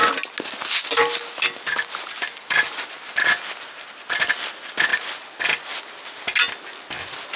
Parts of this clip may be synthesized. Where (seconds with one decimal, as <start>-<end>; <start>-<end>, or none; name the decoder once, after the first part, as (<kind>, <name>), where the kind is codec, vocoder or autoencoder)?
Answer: none